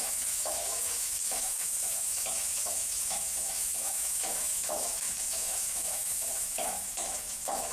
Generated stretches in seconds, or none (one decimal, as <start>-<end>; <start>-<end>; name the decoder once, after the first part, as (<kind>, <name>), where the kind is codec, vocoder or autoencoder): 0.0-7.7 (autoencoder, DAC-VAE)